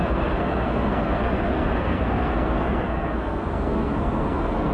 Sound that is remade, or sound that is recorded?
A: remade